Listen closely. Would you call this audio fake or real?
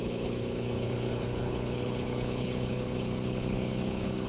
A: fake